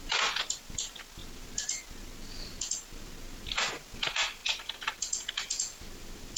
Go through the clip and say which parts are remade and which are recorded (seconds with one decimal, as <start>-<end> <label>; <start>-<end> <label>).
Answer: 0.0-4.4 recorded; 4.4-5.3 remade; 5.3-6.4 recorded